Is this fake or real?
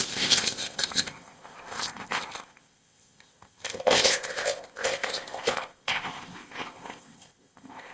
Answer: fake